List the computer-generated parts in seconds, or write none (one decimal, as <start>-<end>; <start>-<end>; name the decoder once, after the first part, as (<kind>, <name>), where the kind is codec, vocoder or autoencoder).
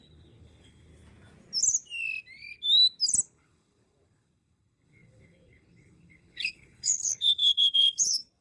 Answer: 0.0-0.9 (codec, HILCodec); 3.2-8.4